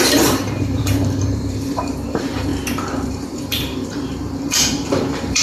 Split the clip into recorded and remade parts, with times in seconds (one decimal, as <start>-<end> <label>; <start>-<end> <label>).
0.0-2.5 remade; 2.5-3.1 recorded; 3.1-5.4 remade